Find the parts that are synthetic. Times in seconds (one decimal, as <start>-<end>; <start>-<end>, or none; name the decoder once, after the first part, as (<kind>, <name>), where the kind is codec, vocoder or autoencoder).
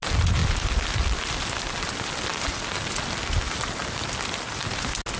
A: none